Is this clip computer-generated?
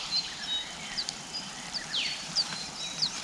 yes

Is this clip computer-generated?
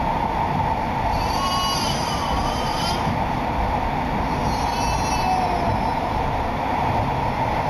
no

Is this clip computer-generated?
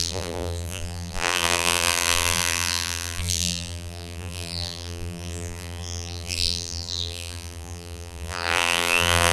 yes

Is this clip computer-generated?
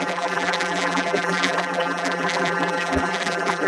yes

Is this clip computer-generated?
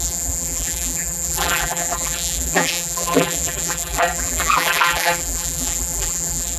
yes